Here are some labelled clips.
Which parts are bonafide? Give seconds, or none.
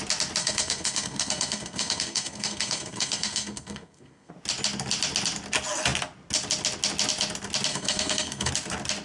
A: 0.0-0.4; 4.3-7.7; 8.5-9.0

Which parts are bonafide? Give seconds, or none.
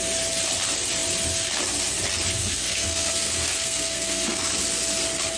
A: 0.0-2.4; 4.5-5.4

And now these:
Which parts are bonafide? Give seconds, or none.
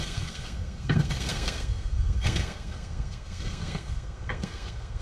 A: none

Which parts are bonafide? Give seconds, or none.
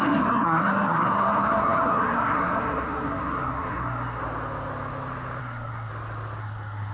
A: 4.2-5.4; 5.9-6.4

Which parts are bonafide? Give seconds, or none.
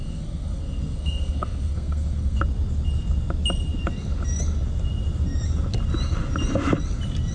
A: 2.4-7.3